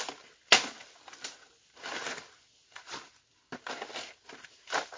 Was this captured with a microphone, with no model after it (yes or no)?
yes